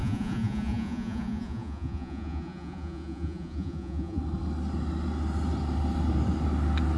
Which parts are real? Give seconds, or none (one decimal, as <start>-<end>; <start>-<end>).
4.2-7.0